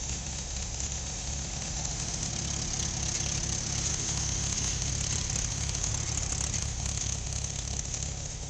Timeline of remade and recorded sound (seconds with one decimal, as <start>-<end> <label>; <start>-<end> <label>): 0.0-2.3 remade; 2.3-3.9 recorded; 3.9-4.9 remade; 4.9-5.5 recorded; 5.5-5.9 remade; 5.9-6.6 recorded; 6.6-8.5 remade